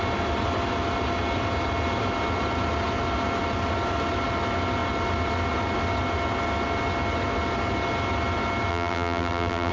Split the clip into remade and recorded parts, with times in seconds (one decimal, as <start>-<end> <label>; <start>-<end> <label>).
0.0-8.7 recorded; 8.7-9.7 remade